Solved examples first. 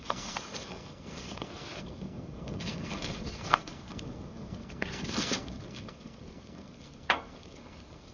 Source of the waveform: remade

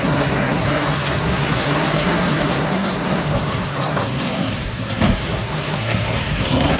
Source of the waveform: remade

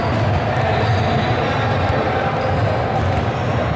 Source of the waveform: recorded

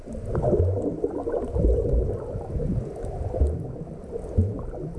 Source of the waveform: recorded